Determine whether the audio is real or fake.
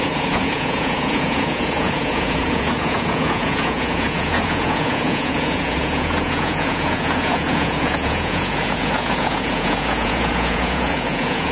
fake